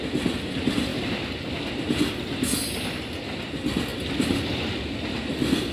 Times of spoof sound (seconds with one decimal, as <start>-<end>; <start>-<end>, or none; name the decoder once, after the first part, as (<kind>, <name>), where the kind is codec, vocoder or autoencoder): none